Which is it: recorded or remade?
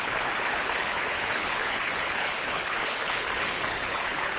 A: remade